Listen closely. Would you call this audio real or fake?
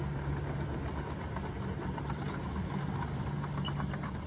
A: real